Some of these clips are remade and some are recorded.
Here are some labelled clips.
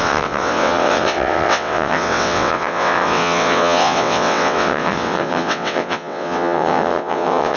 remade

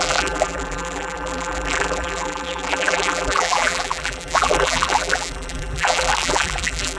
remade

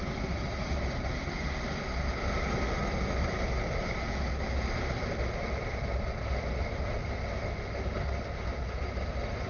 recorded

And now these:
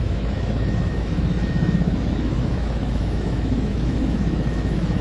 remade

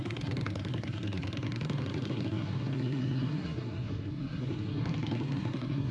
remade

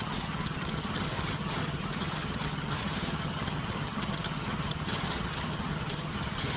remade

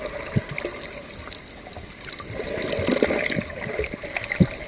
recorded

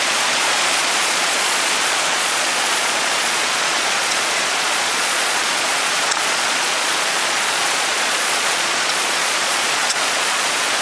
remade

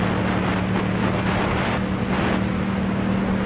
recorded